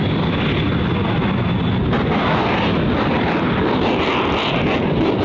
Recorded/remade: recorded